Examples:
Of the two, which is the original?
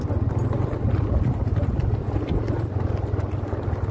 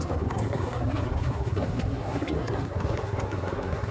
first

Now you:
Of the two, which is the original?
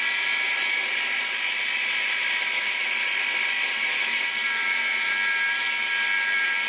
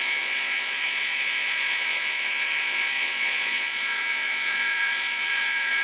first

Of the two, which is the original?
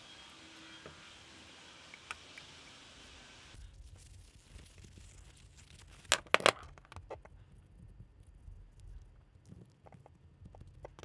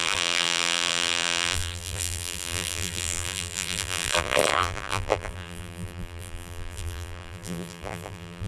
first